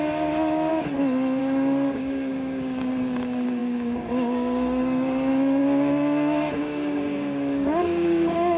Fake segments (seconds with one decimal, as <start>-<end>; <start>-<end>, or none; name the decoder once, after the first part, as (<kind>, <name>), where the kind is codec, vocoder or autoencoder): 0.0-0.7 (codec, DAC); 1.4-8.6